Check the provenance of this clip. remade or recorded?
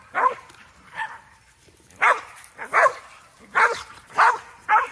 remade